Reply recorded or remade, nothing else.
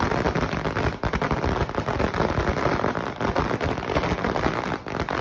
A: recorded